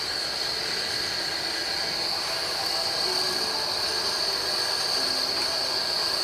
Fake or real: real